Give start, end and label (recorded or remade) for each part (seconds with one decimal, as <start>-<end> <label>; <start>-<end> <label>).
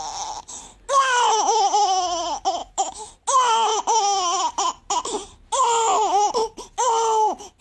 0.0-2.6 recorded; 2.6-3.1 remade; 3.1-7.6 recorded